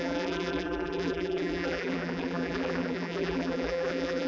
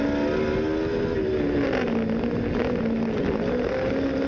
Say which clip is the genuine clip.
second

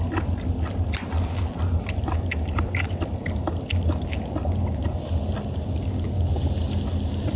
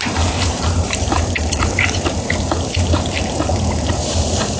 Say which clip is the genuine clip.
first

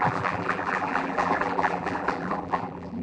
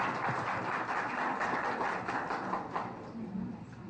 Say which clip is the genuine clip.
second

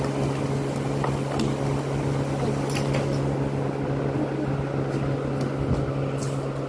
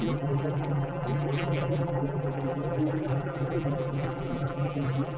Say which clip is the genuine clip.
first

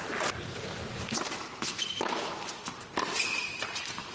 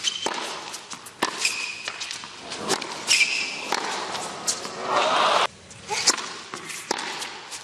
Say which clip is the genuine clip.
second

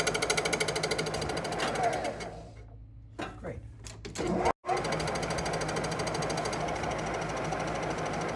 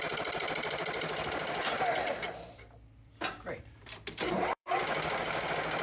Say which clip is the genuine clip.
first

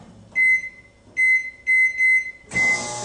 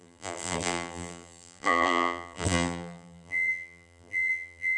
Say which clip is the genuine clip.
first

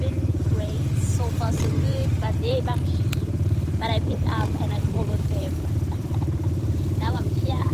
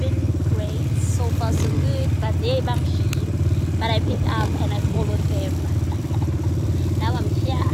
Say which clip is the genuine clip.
second